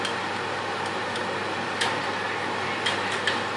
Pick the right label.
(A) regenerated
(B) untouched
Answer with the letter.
B